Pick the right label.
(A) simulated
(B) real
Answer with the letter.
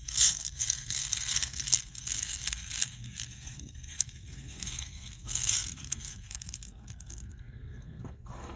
A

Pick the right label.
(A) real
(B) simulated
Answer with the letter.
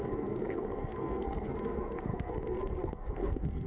B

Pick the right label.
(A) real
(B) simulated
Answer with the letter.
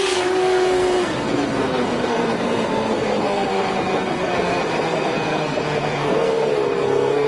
B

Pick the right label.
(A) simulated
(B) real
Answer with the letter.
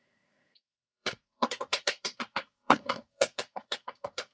A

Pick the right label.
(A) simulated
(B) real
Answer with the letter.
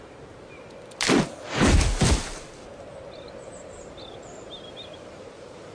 B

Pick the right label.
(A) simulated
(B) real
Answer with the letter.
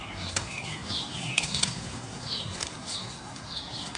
A